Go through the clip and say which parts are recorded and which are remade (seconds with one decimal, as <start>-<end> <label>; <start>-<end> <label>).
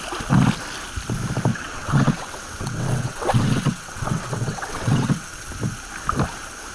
0.0-1.5 recorded; 1.5-5.5 remade; 5.5-6.7 recorded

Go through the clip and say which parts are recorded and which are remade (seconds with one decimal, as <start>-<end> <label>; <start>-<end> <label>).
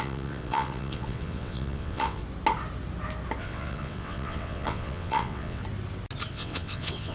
0.0-2.2 remade; 2.2-3.4 recorded; 3.4-5.6 remade; 5.6-6.3 recorded; 6.3-7.1 remade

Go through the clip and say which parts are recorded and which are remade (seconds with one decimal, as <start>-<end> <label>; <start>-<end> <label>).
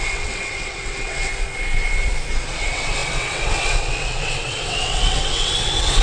0.0-1.3 remade; 1.3-2.3 recorded; 2.3-6.0 remade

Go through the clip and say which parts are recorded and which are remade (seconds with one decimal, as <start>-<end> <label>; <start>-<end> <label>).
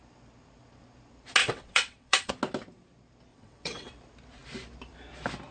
0.0-1.4 recorded; 1.4-2.3 remade; 2.3-3.3 recorded; 3.3-3.9 remade; 3.9-5.5 recorded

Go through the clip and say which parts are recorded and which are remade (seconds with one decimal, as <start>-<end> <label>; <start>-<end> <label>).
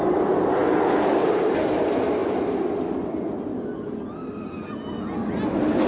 0.0-5.9 recorded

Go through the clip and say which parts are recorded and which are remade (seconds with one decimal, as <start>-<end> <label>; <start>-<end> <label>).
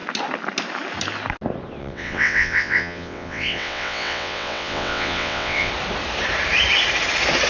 0.0-1.8 recorded; 1.8-5.7 remade; 5.7-7.5 recorded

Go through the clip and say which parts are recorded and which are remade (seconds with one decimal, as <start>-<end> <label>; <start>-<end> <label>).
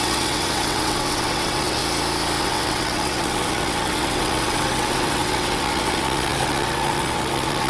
0.0-1.8 remade; 1.8-2.4 recorded; 2.4-7.7 remade